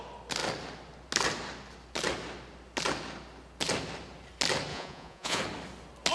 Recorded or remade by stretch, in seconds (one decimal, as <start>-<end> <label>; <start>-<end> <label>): 0.0-4.7 recorded; 4.7-5.4 remade; 5.4-6.1 recorded